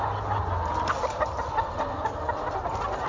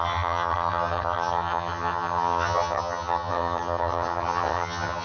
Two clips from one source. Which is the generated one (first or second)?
second